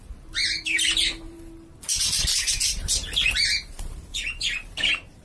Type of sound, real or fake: fake